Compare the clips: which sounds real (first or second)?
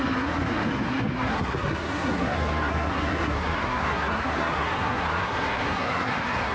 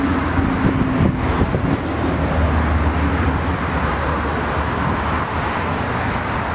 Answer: second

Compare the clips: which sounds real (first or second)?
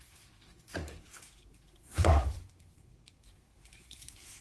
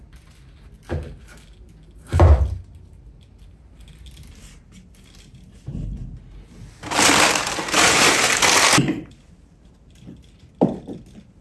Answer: second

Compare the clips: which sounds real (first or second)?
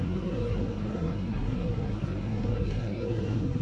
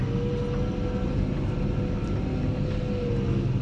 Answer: second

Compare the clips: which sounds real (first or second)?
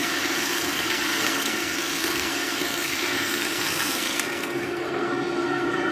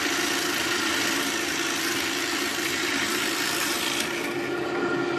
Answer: second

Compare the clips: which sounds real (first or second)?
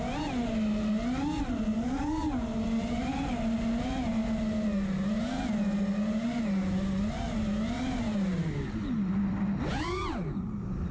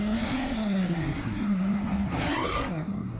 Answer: first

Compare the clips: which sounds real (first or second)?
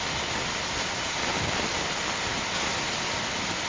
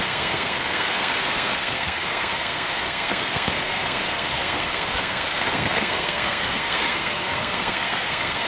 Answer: first